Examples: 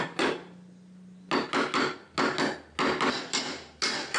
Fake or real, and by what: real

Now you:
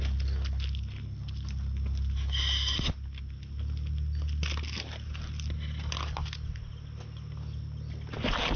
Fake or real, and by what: real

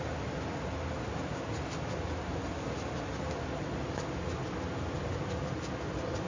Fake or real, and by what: real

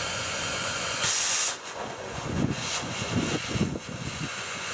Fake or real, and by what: fake, vocoder, Vocos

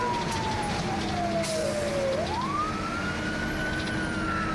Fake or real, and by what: real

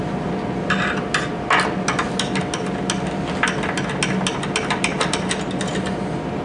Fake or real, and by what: real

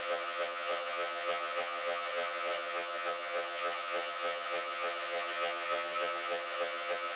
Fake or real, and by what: fake, vocoder, HiFi-GAN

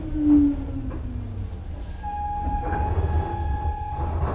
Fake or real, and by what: real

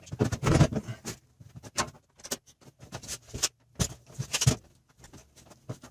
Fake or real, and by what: real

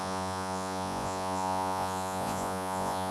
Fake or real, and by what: fake, vocoder, Vocos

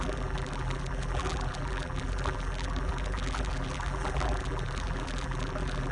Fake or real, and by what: fake, vocoder, BigVGAN v2